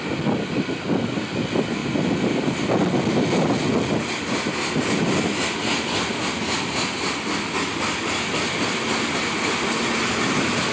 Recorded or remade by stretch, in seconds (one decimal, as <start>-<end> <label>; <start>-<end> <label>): 0.0-10.7 recorded

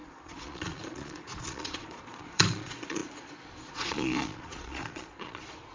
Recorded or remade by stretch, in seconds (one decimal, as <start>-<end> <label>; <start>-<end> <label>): 0.0-5.7 remade

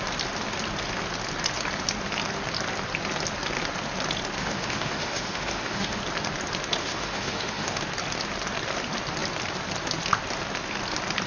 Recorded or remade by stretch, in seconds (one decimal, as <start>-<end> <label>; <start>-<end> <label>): 0.0-4.4 recorded; 4.4-6.0 remade; 6.0-6.8 recorded; 6.8-7.8 remade; 7.8-11.3 recorded

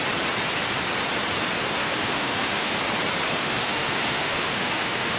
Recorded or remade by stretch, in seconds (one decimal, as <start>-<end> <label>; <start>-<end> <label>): 0.0-1.6 recorded; 1.6-2.7 remade; 2.7-3.3 recorded; 3.3-5.2 remade

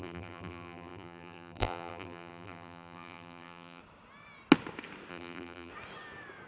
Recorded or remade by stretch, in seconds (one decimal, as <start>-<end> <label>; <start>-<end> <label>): 0.0-3.8 remade; 3.8-5.1 recorded; 5.1-5.7 remade; 5.7-6.5 recorded

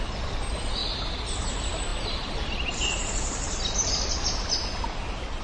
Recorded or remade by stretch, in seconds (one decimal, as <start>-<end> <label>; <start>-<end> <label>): 0.0-5.4 recorded